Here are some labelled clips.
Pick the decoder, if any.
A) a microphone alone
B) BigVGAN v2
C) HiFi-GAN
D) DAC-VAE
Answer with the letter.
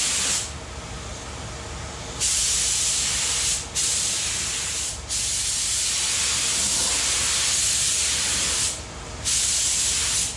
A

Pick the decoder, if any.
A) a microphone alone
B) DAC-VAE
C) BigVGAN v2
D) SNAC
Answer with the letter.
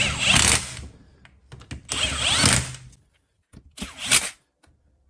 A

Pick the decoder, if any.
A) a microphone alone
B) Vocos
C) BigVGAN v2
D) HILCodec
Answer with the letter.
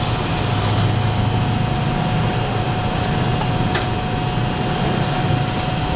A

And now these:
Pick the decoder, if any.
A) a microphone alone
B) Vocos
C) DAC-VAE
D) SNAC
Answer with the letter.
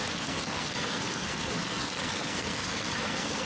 D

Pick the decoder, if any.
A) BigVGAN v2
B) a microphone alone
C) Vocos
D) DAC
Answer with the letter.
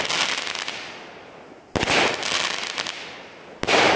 B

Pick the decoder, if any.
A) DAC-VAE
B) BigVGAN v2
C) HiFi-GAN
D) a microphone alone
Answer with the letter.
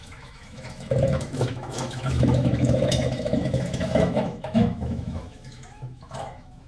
A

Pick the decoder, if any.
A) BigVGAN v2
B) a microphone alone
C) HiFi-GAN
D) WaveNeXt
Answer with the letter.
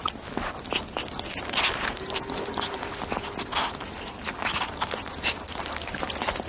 B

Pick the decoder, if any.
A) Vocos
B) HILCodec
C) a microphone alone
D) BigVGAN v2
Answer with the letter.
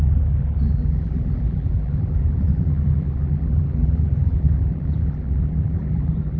D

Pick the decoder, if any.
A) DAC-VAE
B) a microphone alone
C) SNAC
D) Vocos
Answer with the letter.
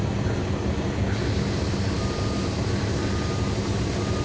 B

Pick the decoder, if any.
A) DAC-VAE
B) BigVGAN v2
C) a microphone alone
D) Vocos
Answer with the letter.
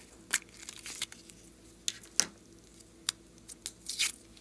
C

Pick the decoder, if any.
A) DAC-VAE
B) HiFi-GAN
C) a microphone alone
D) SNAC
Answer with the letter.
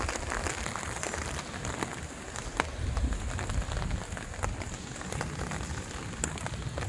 C